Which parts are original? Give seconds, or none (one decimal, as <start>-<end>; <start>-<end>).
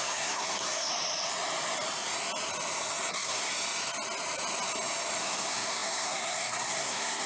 0.9-3.1; 3.5-5.2